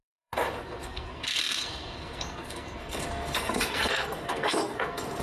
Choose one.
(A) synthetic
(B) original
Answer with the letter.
A